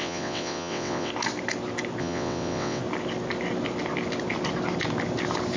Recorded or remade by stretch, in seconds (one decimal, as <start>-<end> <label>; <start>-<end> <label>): 0.0-1.1 remade; 1.1-2.0 recorded; 2.0-2.8 remade; 2.8-5.6 recorded